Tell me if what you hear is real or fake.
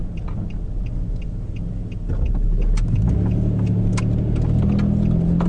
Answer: real